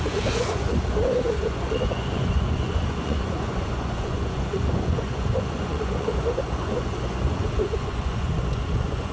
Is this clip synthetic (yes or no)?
yes